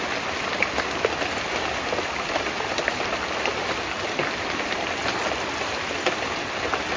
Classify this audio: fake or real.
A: real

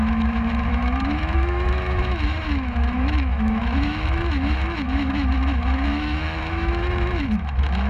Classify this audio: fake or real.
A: fake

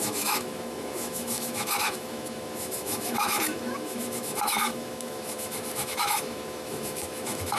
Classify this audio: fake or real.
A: fake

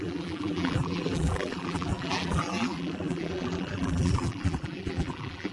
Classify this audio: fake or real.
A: fake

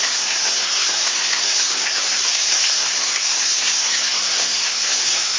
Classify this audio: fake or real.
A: fake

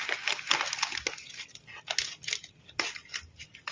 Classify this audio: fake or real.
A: real